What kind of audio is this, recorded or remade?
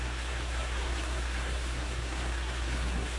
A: remade